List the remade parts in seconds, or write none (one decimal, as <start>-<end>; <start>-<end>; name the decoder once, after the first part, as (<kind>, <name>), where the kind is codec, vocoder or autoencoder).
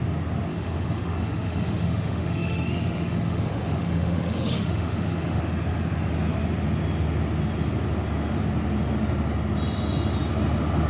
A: 0.5-5.4 (autoencoder, DAC-VAE)